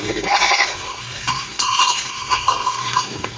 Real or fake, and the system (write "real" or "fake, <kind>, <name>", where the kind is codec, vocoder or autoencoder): fake, codec, SNAC